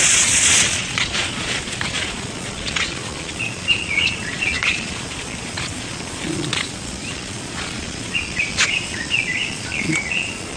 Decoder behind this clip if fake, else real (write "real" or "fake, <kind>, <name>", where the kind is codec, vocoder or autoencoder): fake, vocoder, Vocos